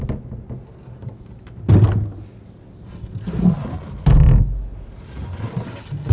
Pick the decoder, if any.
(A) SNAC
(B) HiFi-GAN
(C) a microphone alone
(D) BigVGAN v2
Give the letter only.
C